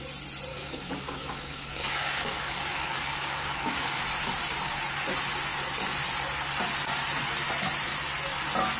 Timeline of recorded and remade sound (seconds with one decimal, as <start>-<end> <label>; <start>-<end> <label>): 0.0-0.5 recorded; 0.5-4.0 remade; 4.0-8.8 recorded